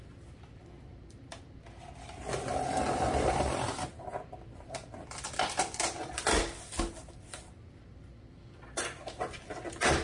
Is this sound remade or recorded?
remade